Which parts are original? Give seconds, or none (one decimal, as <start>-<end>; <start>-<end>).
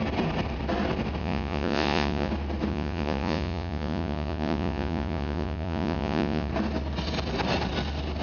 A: 0.0-1.2; 2.3-2.7; 6.5-8.2